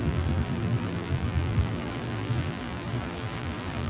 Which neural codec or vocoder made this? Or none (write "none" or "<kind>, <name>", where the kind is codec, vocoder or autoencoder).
vocoder, BigVGAN v2